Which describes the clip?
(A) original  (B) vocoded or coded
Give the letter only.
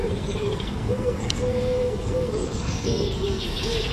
B